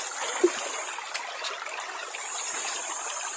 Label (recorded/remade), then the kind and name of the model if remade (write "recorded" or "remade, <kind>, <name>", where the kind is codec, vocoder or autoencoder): recorded